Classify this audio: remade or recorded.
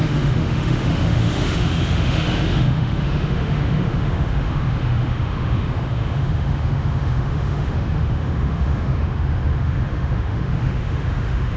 remade